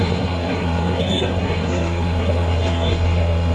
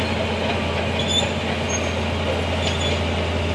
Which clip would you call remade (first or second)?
first